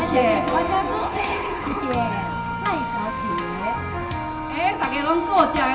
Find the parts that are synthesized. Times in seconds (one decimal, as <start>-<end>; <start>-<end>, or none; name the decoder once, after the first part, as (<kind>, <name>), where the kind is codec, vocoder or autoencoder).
1.0-1.8 (codec, HILCodec)